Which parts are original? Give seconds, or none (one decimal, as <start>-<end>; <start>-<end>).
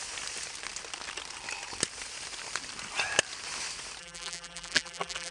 0.0-4.0